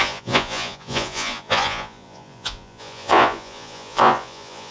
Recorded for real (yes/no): no